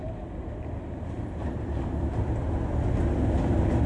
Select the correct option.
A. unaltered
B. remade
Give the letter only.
A